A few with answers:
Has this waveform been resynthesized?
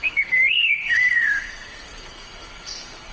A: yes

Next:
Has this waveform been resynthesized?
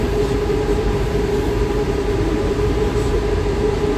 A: yes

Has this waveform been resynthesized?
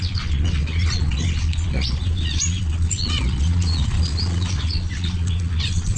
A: yes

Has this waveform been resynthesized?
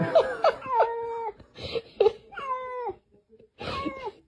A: no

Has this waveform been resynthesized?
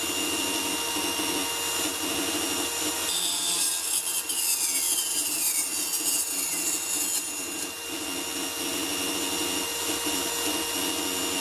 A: no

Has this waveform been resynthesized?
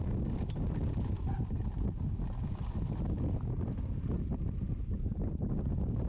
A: no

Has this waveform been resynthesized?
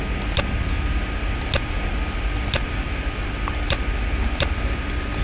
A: no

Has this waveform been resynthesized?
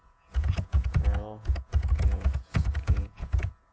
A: yes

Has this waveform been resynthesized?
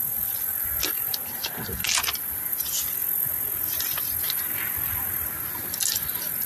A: no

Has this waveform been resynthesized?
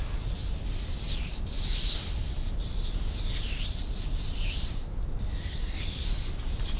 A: no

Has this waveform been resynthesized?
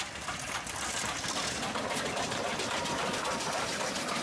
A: yes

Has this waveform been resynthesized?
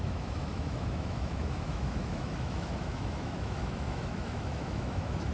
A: yes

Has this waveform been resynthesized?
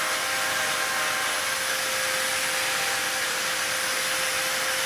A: no